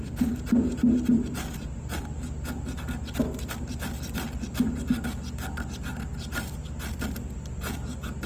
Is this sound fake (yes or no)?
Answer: no